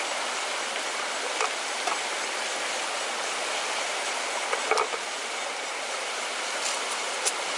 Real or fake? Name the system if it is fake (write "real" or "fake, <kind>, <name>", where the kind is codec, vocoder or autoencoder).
real